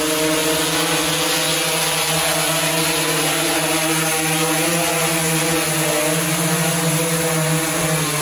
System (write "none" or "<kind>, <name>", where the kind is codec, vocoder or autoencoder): none